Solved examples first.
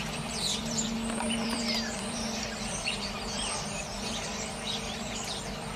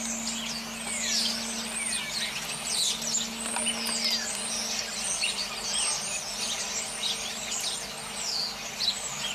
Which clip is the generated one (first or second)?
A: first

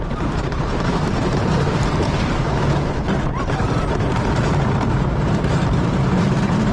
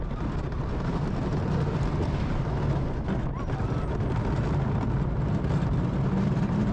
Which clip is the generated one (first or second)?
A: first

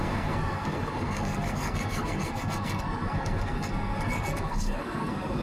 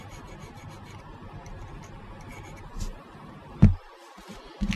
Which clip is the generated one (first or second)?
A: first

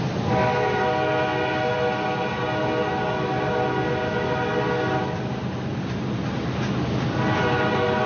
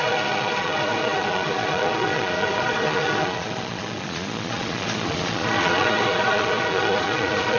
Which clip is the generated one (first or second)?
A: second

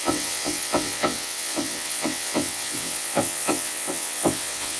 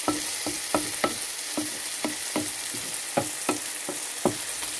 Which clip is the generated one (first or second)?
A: first